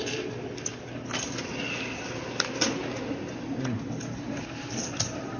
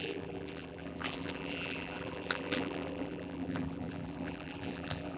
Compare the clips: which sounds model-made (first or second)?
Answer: second